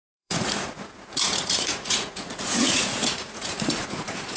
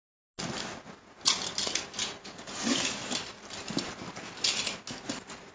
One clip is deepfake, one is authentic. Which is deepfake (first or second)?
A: first